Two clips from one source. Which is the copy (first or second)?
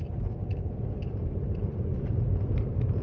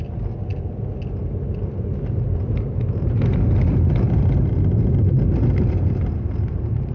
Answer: first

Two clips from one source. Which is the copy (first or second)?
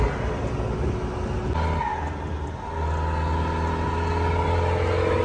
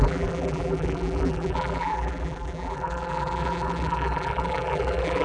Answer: second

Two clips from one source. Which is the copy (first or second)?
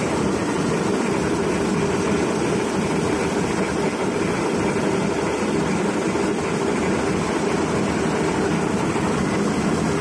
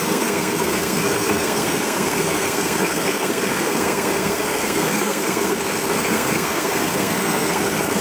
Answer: second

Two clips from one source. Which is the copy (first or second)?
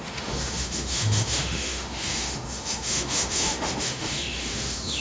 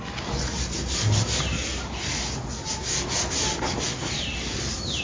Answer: first